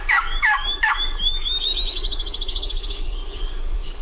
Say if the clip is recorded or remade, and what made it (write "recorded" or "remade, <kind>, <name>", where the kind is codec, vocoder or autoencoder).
remade, codec, DAC